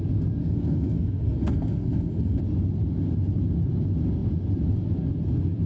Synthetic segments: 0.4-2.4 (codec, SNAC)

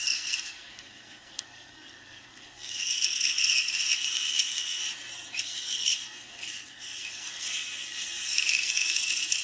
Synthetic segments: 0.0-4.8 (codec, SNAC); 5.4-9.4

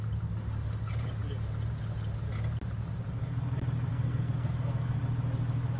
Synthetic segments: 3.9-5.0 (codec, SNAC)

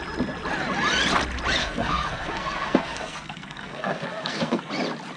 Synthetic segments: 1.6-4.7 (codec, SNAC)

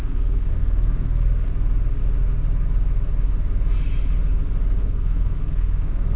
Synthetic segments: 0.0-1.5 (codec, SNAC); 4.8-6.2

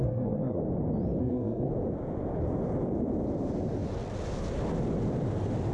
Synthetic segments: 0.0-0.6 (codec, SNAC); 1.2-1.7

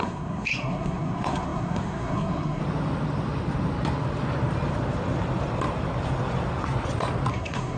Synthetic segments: 0.0-2.6 (codec, SNAC); 7.3-7.8

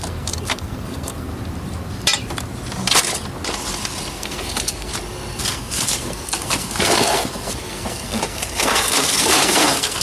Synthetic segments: 0.0-1.3 (codec, SNAC); 4.1-4.9; 5.4-10.0